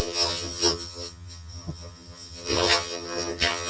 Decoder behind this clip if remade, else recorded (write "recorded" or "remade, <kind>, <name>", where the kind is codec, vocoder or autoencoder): remade, vocoder, HiFi-GAN